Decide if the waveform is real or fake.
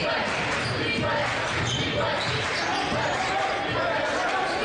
real